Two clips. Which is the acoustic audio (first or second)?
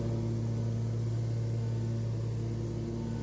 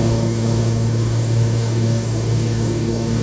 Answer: first